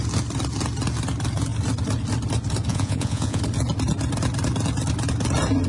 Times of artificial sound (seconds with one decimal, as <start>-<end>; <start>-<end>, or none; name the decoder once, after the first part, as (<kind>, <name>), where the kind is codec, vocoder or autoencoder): 2.7-3.4 (vocoder, Vocos)